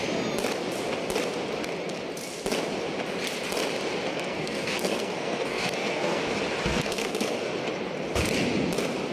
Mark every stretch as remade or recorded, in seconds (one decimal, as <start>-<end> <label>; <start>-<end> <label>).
0.0-4.1 recorded; 4.1-6.2 remade; 6.2-6.7 recorded; 6.7-7.5 remade; 7.5-9.1 recorded